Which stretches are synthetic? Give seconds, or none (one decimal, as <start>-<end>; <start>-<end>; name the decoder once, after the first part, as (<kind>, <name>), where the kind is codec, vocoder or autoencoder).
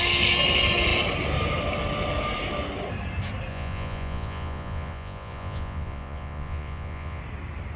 3.5-7.2 (vocoder, Vocos)